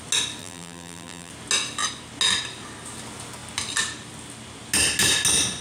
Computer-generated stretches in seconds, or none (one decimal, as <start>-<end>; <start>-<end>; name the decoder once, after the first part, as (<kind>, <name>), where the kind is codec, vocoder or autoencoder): 0.4-1.3 (vocoder, BigVGAN v2)